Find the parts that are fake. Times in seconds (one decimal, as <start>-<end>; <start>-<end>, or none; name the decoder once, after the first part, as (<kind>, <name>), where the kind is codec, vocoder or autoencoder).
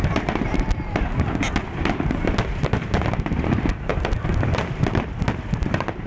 3.9-5.1 (vocoder, BigVGAN v2)